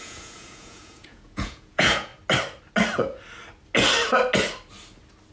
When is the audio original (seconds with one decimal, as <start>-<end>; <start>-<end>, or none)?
2.1-5.3